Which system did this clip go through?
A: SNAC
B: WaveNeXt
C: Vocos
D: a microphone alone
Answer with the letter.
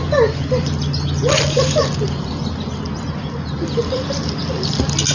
D